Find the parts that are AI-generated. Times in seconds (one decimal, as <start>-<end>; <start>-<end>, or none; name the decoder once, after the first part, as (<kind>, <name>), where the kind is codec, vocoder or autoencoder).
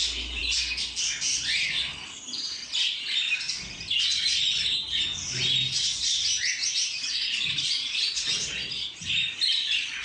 none